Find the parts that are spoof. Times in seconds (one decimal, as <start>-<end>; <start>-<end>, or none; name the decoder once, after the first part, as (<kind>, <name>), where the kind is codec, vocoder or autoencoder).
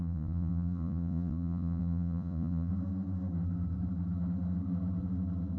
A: 0.0-2.7 (vocoder, Vocos)